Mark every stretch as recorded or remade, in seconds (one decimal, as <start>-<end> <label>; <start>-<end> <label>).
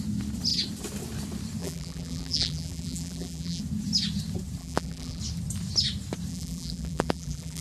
0.0-1.6 recorded; 1.6-3.6 remade; 3.6-4.6 recorded; 4.6-5.2 remade; 5.2-6.3 recorded; 6.3-7.6 remade